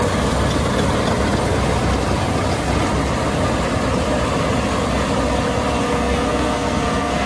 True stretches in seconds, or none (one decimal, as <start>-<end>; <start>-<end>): 0.0-5.8